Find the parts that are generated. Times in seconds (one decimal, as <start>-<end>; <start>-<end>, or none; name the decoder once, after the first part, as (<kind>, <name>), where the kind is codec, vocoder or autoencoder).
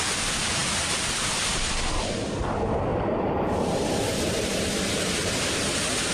2.9-3.9 (vocoder, BigVGAN v2)